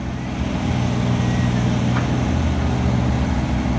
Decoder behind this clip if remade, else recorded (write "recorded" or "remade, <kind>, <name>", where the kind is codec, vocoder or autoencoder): recorded